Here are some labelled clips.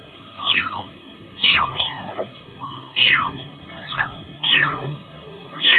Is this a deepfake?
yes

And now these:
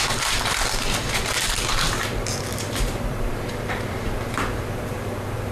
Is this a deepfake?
yes